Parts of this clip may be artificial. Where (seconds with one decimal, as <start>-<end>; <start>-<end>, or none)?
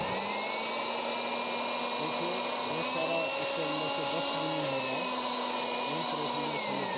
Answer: none